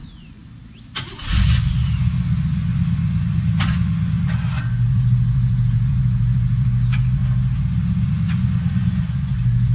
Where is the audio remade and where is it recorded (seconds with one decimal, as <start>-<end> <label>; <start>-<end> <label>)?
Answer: 0.0-0.4 remade; 0.4-1.2 recorded; 1.2-7.2 remade; 7.2-8.1 recorded; 8.1-9.7 remade